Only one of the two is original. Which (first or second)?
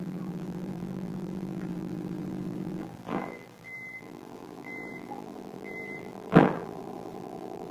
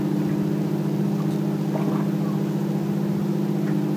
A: second